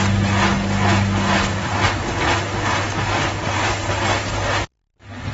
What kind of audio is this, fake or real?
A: real